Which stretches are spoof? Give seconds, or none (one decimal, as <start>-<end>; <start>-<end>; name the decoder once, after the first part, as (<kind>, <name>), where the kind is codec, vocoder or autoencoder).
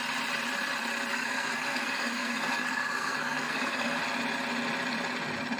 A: 1.1-4.0 (codec, SNAC)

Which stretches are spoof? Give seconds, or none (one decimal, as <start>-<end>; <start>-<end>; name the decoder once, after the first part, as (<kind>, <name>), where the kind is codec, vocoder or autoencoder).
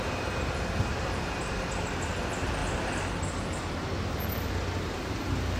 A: 0.0-2.6 (vocoder, BigVGAN v2); 4.1-5.6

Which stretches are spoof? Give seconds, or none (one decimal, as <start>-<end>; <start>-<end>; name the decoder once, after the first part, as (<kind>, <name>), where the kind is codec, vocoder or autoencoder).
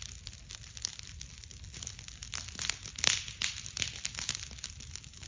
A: none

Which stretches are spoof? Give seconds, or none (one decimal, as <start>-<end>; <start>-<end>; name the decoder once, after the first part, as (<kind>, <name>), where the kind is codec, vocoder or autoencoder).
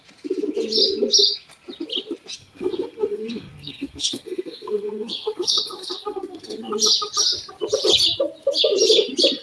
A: 2.4-6.7 (codec, SNAC)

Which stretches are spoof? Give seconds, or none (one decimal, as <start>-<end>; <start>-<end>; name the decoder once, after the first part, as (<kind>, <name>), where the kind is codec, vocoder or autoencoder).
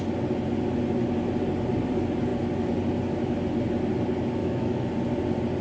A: 4.4-4.9 (autoencoder, DAC-VAE)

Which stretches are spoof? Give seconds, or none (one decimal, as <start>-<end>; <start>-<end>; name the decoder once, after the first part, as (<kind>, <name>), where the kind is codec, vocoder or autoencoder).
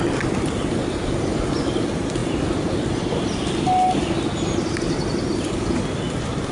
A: none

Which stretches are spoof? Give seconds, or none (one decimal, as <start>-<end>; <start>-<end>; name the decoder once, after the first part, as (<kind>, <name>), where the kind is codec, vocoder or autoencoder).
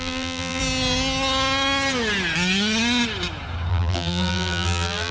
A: 0.0-0.6 (vocoder, BigVGAN v2); 3.7-5.1